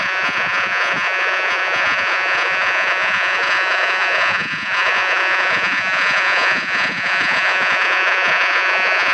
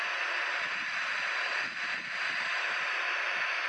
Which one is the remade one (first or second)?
first